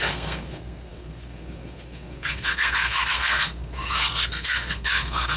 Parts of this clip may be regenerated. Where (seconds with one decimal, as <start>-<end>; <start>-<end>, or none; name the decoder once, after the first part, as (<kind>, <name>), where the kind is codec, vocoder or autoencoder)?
0.0-5.4 (codec, SNAC)